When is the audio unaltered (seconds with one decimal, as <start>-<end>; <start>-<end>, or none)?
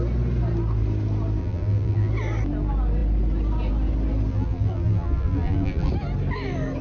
0.0-1.4; 2.1-4.3; 5.9-6.8